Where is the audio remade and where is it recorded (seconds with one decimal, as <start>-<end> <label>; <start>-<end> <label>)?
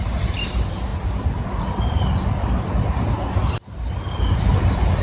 0.0-5.0 recorded